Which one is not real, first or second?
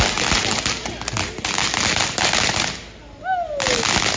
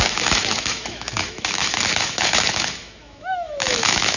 second